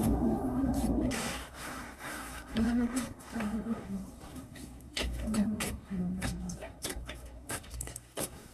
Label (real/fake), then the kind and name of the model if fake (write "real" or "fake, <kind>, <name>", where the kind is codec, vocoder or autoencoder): fake, codec, SNAC